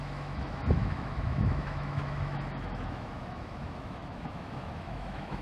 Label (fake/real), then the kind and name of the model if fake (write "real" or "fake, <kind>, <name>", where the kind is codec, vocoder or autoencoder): fake, autoencoder, DAC-VAE